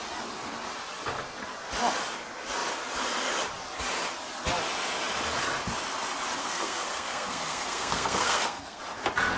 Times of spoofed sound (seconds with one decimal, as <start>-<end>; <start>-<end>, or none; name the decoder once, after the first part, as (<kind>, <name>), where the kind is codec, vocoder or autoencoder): 6.4-8.8 (codec, SNAC)